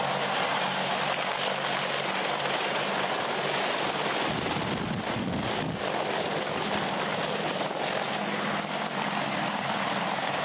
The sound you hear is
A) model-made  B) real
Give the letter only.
B